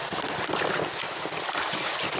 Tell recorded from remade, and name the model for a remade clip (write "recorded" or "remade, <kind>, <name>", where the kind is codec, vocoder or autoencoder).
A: recorded